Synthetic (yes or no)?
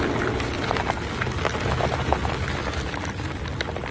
no